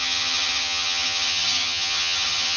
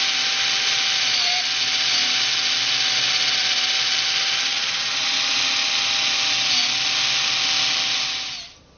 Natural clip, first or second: second